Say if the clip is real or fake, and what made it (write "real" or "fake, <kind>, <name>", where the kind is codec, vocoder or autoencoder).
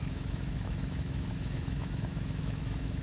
fake, autoencoder, DAC-VAE